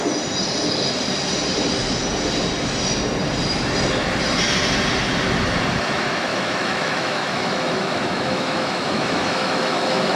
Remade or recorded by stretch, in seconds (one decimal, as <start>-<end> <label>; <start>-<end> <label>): 0.0-6.3 recorded; 6.3-10.2 remade